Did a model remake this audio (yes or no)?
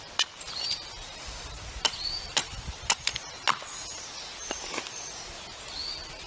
no